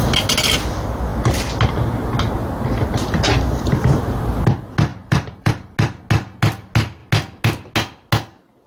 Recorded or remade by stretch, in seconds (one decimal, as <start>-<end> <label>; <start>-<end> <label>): 0.0-4.9 recorded; 4.9-5.5 remade; 5.5-8.7 recorded